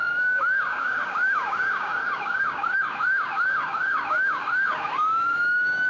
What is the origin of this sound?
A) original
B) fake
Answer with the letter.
B